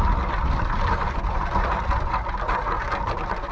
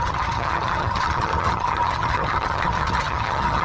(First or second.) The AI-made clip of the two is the second